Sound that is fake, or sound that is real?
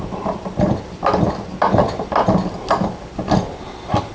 real